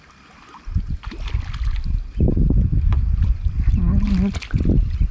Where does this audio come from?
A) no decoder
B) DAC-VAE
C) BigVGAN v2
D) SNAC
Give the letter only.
A